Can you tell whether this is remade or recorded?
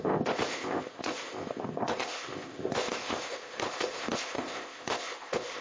remade